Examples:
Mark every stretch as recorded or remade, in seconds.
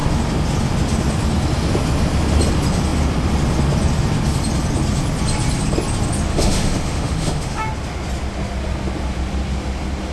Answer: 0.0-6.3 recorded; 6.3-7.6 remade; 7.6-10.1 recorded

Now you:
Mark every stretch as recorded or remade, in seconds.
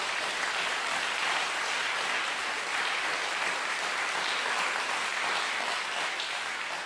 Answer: 0.0-1.8 remade; 1.8-2.4 recorded; 2.4-6.9 remade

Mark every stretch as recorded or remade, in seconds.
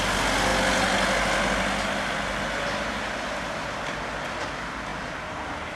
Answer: 0.0-5.8 recorded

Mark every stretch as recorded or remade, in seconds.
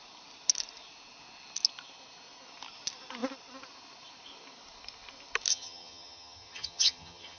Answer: 0.0-5.5 recorded; 5.5-7.4 remade